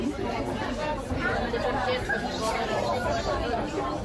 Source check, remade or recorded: remade